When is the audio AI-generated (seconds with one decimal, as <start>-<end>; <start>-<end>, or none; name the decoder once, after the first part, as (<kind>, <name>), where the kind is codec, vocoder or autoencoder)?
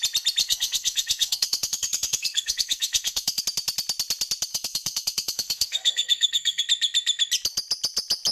0.4-3.4 (codec, SNAC); 4.5-6.6